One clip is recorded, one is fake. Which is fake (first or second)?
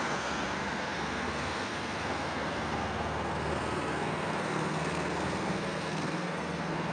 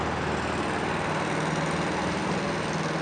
first